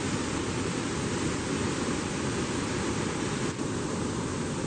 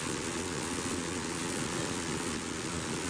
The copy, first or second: second